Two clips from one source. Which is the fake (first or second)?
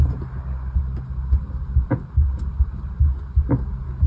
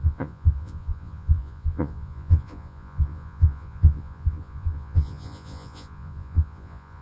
second